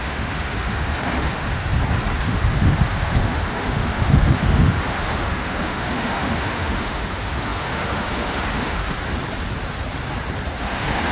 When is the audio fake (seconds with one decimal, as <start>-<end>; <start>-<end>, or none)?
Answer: 0.0-1.7; 2.2-9.0; 10.6-11.1